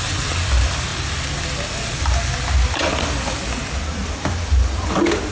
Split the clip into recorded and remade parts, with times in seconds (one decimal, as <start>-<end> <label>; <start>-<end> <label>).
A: 0.0-5.3 recorded